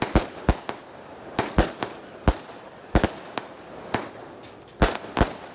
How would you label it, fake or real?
real